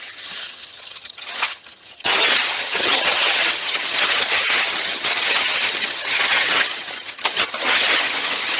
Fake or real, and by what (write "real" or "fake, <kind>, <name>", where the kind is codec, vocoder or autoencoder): fake, vocoder, HiFi-GAN